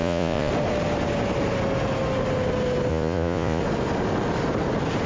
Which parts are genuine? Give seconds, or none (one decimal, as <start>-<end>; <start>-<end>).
0.5-2.9; 3.6-5.1